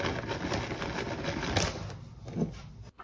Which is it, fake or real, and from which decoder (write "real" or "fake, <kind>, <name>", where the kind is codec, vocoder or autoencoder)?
real